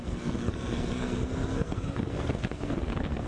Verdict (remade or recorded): remade